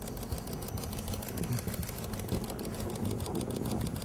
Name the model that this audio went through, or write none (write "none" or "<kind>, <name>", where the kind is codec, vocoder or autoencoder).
none